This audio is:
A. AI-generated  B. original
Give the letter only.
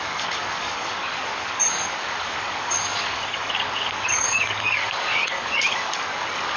A